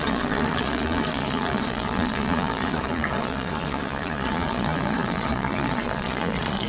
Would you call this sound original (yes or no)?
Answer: no